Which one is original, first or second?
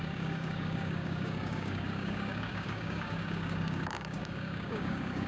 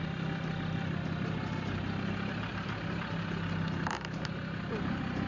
second